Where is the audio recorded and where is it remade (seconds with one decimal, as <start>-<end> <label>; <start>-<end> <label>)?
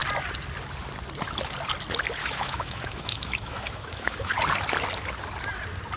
0.0-2.2 recorded; 2.2-4.3 remade; 4.3-6.0 recorded